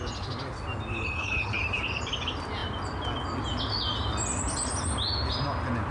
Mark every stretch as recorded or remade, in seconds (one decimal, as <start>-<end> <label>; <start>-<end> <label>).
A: 0.0-0.9 recorded; 0.9-1.6 remade; 1.6-5.9 recorded